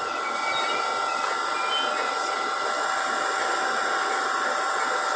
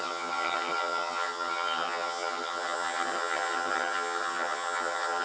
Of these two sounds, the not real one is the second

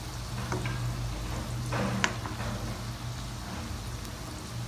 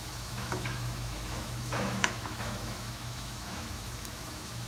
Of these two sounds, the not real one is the second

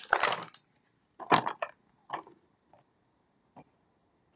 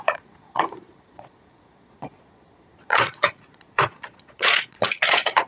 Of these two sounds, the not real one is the second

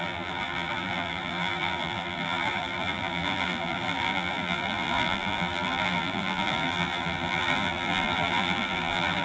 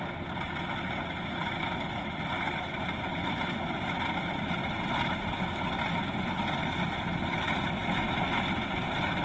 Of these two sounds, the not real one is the first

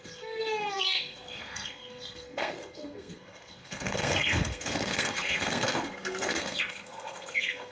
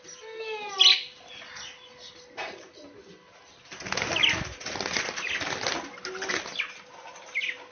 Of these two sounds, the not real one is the first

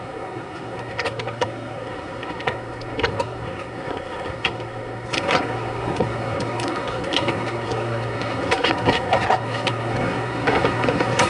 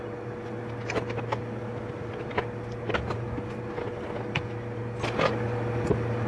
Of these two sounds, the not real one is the first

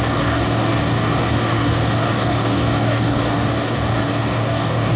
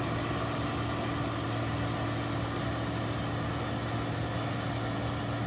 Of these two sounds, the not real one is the first